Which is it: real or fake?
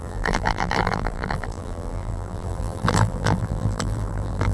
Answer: fake